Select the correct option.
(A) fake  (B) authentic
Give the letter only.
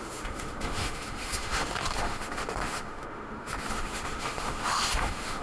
A